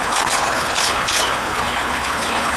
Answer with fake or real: fake